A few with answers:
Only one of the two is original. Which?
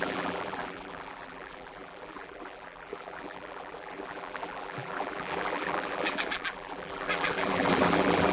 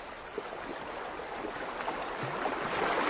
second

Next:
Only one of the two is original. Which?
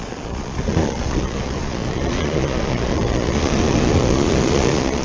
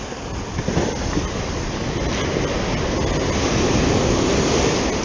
second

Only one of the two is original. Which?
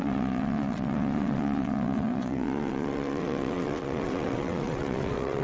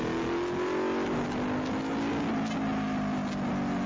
second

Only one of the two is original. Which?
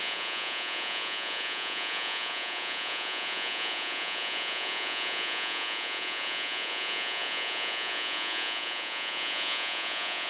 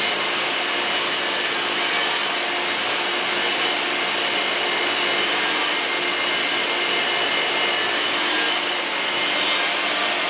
second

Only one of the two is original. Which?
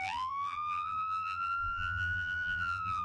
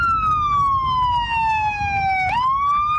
second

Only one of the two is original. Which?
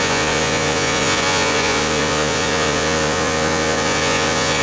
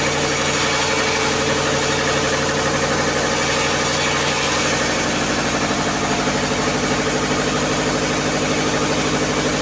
second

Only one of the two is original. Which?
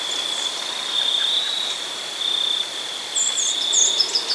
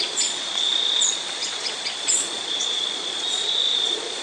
first